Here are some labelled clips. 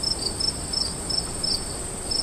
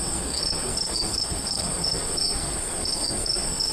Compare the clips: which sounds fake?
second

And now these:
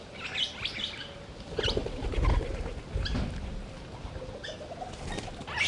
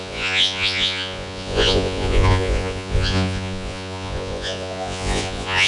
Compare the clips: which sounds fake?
second